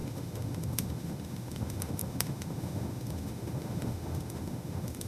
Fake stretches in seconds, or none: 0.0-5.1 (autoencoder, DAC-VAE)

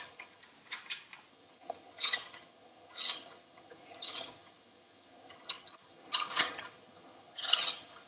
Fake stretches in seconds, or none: 0.0-0.4 (vocoder, HiFi-GAN); 1.3-8.1